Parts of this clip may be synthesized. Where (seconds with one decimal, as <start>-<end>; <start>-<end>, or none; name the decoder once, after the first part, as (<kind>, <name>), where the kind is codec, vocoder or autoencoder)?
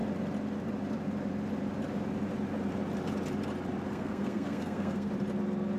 3.9-5.1 (codec, SNAC)